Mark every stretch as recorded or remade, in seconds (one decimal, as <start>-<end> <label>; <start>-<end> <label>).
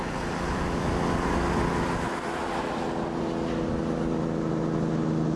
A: 0.0-5.4 recorded